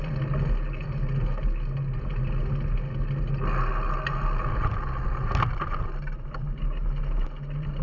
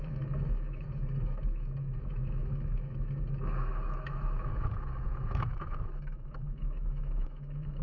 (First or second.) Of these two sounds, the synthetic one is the second